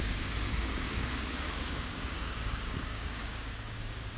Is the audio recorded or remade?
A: remade